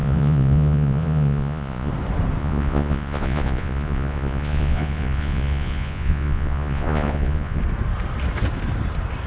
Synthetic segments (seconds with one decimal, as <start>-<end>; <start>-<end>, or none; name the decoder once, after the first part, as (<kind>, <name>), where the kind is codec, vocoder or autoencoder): 0.0-1.9 (vocoder, Vocos); 2.4-7.6